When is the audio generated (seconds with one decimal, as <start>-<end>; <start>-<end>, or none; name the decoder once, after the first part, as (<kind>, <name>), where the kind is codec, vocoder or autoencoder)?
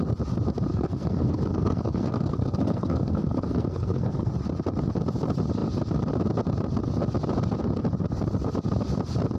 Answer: 0.7-4.3 (codec, SNAC)